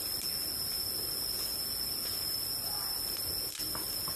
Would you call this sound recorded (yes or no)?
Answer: yes